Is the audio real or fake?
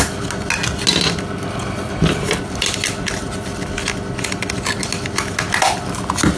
real